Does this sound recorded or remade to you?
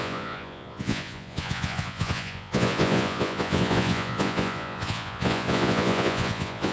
remade